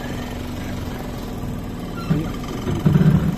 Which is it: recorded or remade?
recorded